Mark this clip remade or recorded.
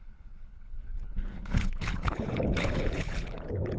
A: remade